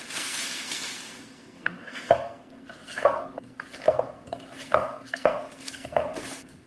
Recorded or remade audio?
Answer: remade